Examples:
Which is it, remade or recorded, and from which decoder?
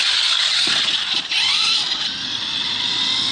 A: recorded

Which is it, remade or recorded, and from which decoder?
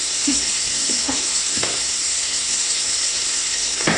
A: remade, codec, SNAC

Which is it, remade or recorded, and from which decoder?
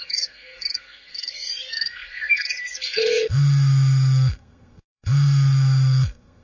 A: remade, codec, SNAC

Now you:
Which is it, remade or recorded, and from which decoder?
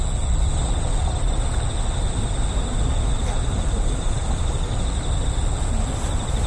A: recorded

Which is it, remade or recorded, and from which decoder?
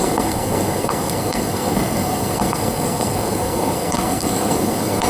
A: remade, codec, SNAC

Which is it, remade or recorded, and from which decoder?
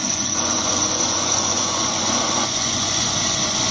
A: remade, vocoder, Vocos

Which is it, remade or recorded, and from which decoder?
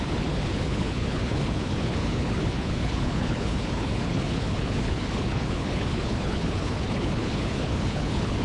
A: remade, codec, HILCodec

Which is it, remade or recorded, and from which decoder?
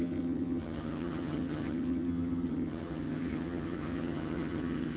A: remade, vocoder, HiFi-GAN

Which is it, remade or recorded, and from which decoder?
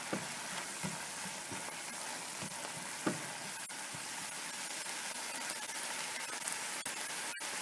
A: recorded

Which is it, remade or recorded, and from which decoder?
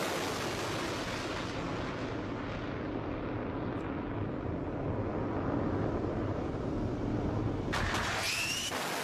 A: recorded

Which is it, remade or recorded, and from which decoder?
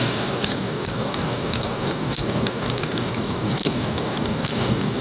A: remade, codec, DAC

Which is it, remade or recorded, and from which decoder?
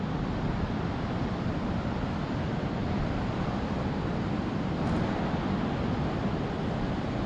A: recorded